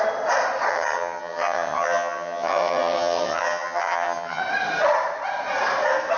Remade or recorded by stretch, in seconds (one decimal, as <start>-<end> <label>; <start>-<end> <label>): 0.0-0.7 recorded; 0.7-4.4 remade; 4.4-6.2 recorded